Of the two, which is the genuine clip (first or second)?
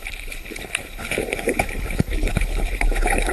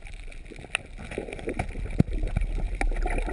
second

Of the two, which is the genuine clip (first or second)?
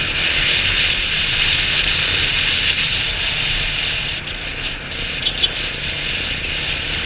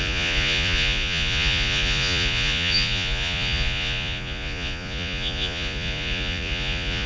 first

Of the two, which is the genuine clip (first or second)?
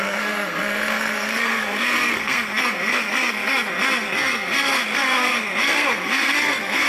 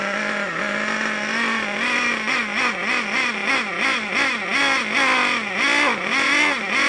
second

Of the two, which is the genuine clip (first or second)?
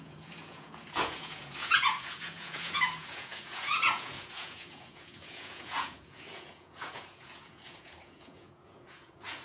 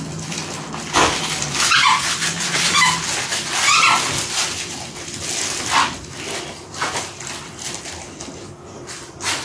second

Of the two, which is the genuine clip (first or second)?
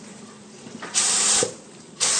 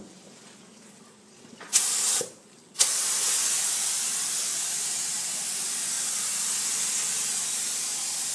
second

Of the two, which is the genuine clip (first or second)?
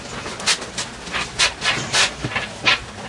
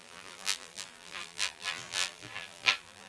first